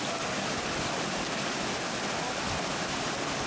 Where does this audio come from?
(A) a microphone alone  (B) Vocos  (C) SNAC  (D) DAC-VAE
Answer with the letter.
A